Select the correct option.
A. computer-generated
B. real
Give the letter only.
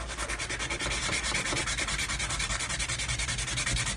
B